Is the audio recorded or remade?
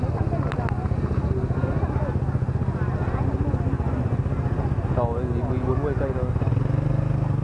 recorded